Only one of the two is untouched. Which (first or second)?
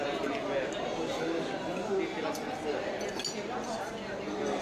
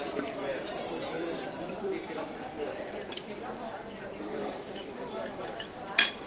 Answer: first